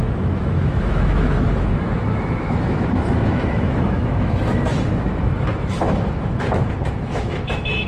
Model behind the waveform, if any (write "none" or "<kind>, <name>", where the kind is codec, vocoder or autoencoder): autoencoder, DAC-VAE